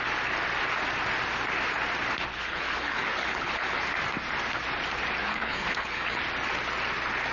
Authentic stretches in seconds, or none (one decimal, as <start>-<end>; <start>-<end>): 0.0-2.3; 3.8-5.2; 6.2-7.3